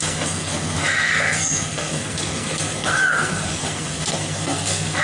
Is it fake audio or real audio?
fake